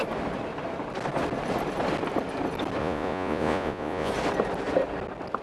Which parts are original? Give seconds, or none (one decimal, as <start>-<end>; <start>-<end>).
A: 0.0-2.8; 4.1-5.4